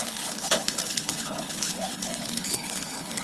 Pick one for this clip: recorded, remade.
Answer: remade